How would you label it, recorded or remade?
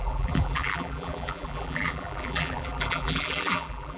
remade